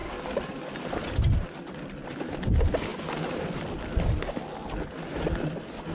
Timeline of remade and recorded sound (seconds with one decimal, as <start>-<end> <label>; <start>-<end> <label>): 0.0-5.9 recorded